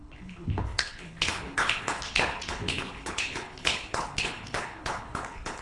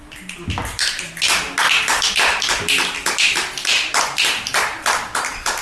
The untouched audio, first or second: second